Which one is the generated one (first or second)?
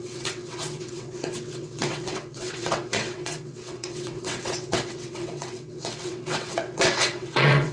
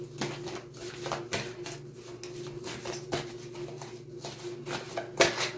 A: first